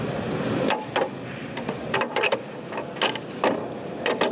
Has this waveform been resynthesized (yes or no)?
no